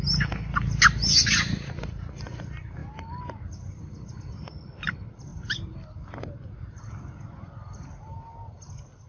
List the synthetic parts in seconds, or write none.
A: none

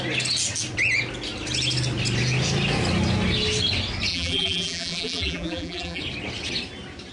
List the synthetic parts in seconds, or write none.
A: 4.1-6.0 (vocoder, BigVGAN v2)

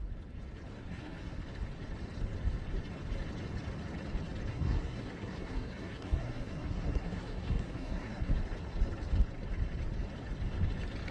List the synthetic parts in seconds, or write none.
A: 0.7-1.4 (codec, SNAC); 4.5-8.3

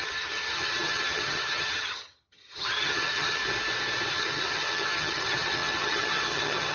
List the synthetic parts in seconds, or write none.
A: 0.0-3.4 (vocoder, HiFi-GAN); 4.1-6.7

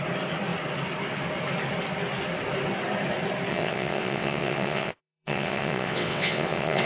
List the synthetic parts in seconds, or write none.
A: 3.5-6.9 (vocoder, WaveNeXt)

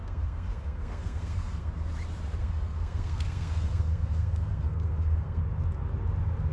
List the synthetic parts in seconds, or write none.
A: 0.0-1.7 (codec, SNAC); 2.4-5.4

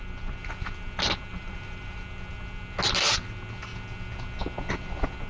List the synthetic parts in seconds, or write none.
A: 1.3-2.0 (vocoder, BigVGAN v2)